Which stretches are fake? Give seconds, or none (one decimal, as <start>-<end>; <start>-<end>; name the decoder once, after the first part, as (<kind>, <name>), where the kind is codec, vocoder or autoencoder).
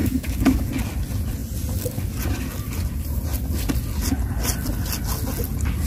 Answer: 0.0-0.7 (codec, DAC)